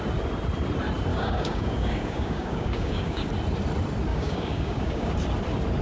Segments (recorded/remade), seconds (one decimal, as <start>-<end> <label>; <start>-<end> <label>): 0.0-1.1 recorded; 1.1-3.3 remade; 3.3-4.1 recorded; 4.1-5.1 remade; 5.1-5.8 recorded